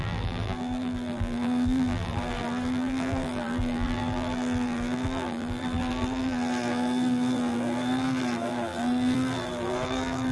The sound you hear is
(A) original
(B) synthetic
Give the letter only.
B